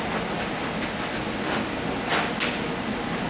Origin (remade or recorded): recorded